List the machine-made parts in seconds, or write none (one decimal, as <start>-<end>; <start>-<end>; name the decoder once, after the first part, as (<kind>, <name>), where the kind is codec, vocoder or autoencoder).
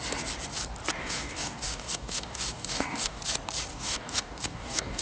1.0-3.2 (codec, DAC); 3.7-5.0